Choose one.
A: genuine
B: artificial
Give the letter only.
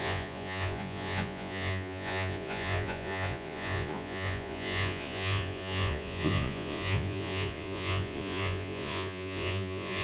B